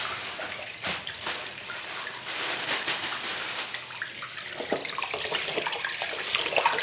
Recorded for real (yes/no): yes